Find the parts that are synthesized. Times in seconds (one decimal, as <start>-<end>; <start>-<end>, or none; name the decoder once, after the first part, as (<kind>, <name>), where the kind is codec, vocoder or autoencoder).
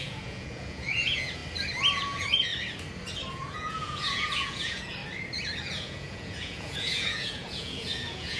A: 0.0-1.4 (vocoder, Vocos); 2.0-2.5; 3.3-5.0; 5.6-8.4